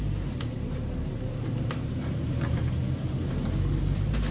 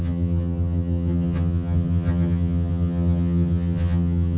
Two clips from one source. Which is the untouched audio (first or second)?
first